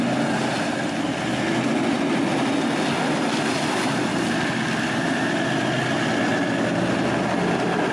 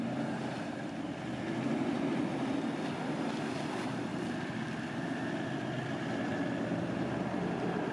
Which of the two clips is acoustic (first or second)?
first